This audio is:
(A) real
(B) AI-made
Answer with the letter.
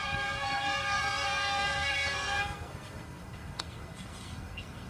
B